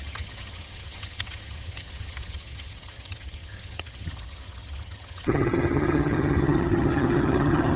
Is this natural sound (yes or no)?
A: no